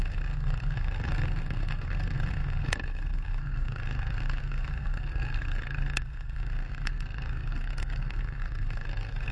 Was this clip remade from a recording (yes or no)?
yes